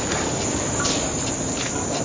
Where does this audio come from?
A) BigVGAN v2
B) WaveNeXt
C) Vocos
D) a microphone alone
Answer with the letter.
D